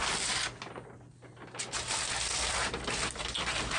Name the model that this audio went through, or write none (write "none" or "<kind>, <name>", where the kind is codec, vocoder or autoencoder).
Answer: none